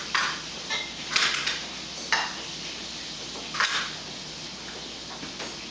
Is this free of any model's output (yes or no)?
yes